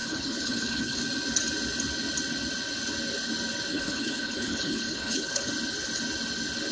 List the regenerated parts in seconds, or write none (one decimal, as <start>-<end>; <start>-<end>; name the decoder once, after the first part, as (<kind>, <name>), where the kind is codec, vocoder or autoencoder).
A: 0.0-1.0 (codec, HILCodec); 3.7-5.5